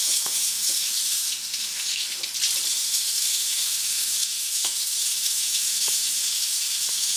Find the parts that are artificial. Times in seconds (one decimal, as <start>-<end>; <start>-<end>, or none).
0.0-2.2; 2.7-7.2